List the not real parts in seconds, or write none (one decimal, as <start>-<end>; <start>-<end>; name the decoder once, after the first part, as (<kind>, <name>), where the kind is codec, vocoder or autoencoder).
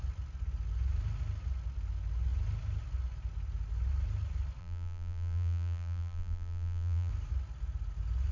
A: 4.6-7.1 (vocoder, BigVGAN v2)